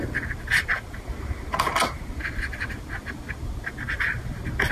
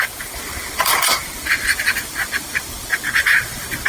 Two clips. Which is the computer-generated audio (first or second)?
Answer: second